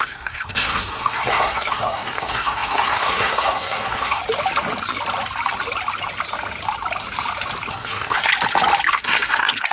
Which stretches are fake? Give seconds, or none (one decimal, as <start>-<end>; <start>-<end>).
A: 0.0-4.2; 7.7-8.3; 8.9-9.7